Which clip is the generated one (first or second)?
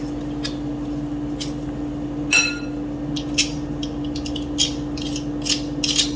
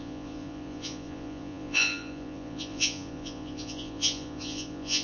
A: second